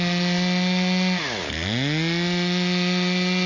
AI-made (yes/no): no